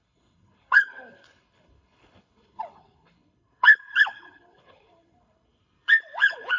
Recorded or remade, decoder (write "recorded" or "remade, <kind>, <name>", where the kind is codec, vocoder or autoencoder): remade, codec, HILCodec